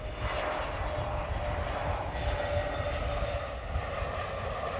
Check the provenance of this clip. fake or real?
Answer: real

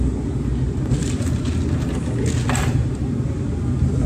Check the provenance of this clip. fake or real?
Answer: real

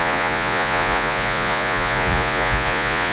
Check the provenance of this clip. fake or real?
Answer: fake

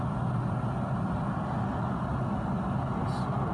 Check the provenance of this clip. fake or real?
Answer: real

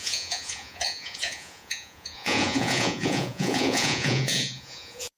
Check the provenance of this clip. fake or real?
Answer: fake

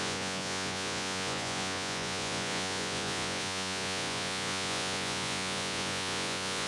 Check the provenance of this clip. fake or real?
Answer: fake